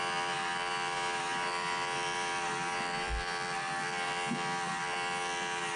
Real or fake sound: fake